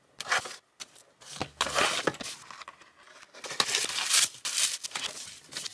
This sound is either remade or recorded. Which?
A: recorded